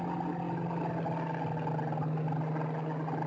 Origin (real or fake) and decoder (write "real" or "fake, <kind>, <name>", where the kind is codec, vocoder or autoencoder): real